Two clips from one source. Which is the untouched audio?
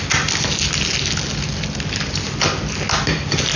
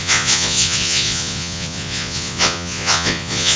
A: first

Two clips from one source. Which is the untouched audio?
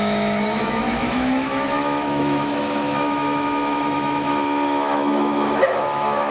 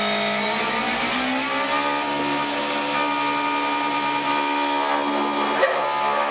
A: second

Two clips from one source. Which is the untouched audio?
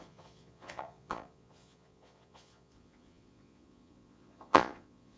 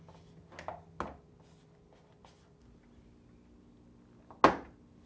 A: second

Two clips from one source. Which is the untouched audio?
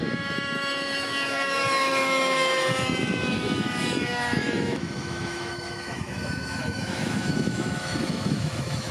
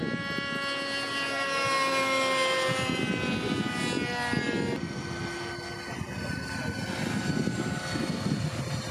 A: second